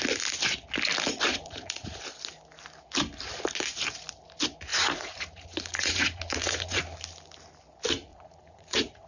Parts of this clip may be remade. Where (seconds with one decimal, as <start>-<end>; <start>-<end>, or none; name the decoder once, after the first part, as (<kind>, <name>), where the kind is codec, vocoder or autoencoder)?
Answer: 1.3-2.0 (vocoder, Vocos); 4.7-6.8; 8.1-9.1